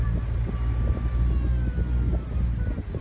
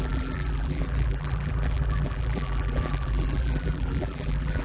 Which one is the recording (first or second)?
first